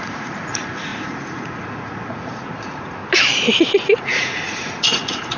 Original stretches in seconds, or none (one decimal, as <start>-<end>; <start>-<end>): 3.0-4.0